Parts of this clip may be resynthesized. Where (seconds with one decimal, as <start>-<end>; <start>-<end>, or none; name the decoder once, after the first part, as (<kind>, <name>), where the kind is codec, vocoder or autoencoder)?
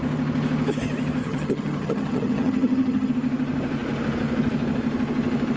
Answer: 1.2-3.1 (vocoder, HiFi-GAN)